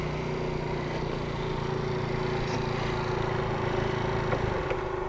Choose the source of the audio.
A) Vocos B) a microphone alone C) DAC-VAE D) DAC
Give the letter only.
B